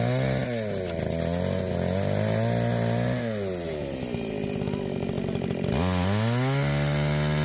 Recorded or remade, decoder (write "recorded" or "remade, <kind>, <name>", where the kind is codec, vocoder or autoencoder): recorded